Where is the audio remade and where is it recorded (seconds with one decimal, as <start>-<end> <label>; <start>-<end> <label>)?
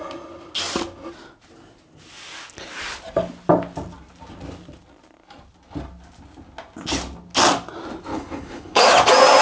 0.0-8.1 recorded; 8.1-8.8 remade; 8.8-9.4 recorded